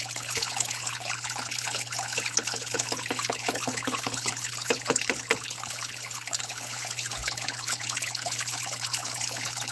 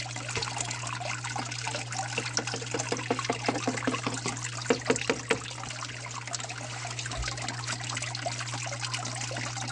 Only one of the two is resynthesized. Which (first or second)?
first